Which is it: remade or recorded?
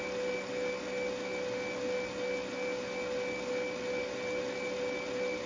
recorded